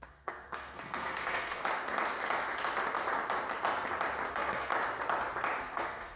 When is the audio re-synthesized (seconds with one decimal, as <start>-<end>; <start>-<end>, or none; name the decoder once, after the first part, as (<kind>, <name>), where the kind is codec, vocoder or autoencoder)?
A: 0.0-1.6 (codec, SNAC); 4.3-4.7; 5.6-6.2